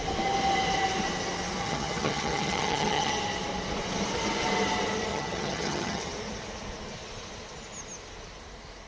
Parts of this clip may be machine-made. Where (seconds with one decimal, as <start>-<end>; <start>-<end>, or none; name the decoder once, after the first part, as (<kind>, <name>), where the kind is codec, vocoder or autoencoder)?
1.6-3.1 (vocoder, HiFi-GAN); 5.1-6.1